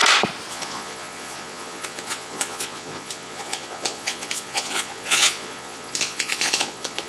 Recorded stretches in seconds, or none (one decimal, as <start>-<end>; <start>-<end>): 0.0-0.5